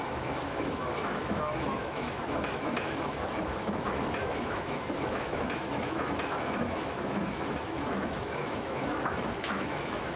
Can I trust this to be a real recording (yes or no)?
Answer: no